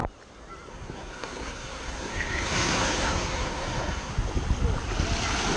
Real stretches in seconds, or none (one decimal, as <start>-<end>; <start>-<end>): 0.0-0.7; 4.1-5.6